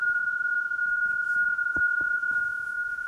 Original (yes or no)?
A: no